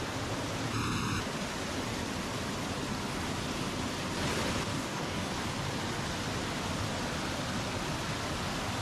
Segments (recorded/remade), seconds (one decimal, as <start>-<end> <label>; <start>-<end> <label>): 0.0-4.7 recorded; 4.7-5.3 remade; 5.3-8.8 recorded